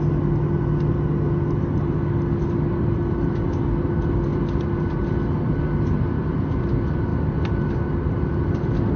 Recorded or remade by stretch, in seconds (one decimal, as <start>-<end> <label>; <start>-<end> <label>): 0.0-9.0 recorded